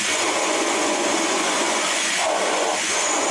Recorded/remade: remade